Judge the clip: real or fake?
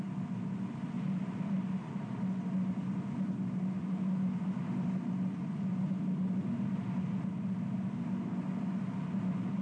real